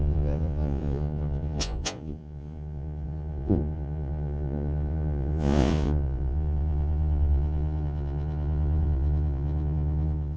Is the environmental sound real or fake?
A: fake